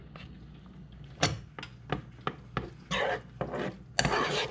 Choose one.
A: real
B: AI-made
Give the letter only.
A